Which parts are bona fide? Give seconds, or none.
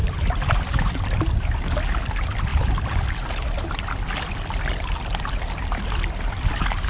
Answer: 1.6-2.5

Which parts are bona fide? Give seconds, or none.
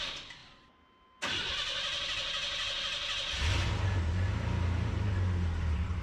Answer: 0.0-6.0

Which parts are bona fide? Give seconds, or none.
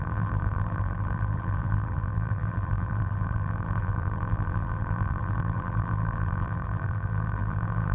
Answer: none